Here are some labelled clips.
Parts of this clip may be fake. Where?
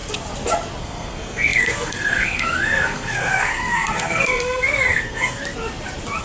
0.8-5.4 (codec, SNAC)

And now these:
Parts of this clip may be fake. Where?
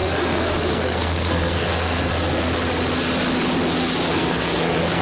0.0-2.1 (codec, SNAC); 4.1-5.0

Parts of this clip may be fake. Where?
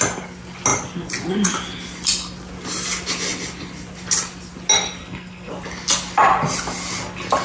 5.0-5.5 (codec, SNAC)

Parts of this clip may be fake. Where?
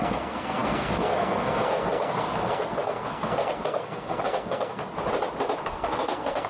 0.0-4.8 (codec, SNAC); 5.6-6.5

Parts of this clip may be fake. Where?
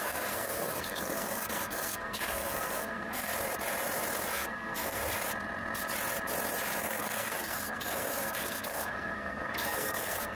0.0-3.3 (codec, SNAC); 4.3-5.0; 6.8-10.4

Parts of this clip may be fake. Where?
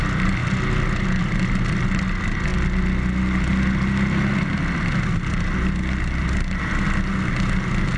none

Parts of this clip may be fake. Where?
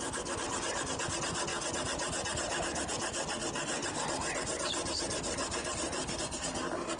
none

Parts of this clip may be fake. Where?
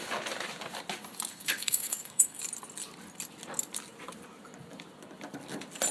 1.3-2.4 (codec, SNAC)